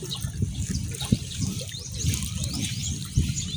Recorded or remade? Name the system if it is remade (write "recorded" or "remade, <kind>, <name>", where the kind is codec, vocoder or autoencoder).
recorded